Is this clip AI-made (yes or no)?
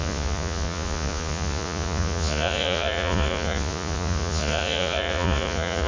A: yes